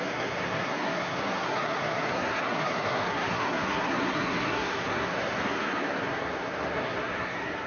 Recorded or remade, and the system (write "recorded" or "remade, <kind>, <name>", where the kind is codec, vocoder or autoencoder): remade, codec, SNAC